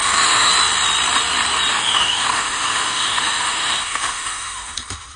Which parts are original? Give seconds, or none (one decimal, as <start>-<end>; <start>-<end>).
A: 0.5-1.7